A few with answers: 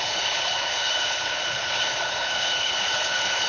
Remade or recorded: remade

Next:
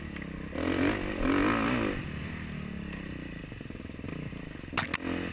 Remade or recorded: recorded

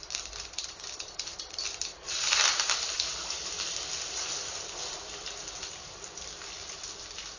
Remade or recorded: remade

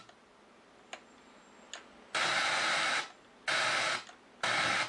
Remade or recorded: recorded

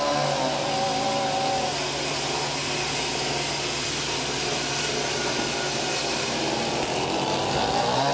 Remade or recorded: recorded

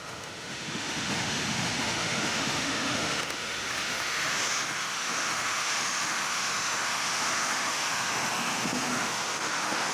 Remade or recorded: remade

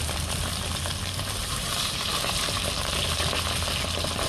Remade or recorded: recorded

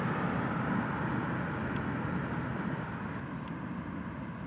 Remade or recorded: recorded